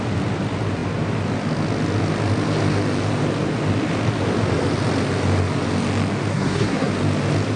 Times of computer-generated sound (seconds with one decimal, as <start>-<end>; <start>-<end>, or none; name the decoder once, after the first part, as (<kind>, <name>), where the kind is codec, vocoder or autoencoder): 6.3-6.9 (codec, SNAC)